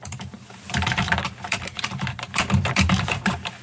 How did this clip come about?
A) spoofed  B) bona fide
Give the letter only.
A